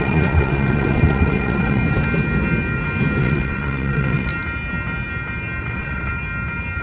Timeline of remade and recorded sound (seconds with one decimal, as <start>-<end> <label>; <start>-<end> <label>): 0.0-1.8 remade; 1.8-3.2 recorded; 3.2-4.3 remade; 4.3-5.6 recorded; 5.6-6.1 remade; 6.1-6.8 recorded